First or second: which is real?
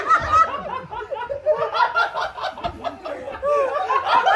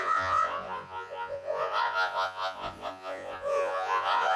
first